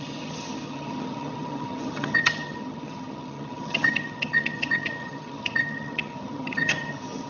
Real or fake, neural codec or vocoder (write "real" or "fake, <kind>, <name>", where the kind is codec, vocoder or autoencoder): fake, vocoder, HiFi-GAN